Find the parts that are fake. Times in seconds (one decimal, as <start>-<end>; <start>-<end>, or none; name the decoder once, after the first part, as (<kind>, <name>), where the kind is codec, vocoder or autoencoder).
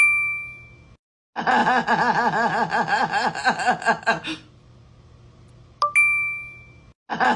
none